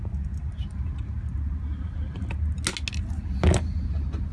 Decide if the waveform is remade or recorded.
recorded